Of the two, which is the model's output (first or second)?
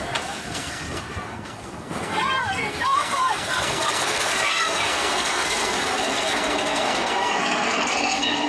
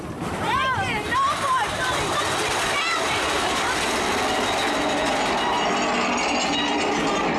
first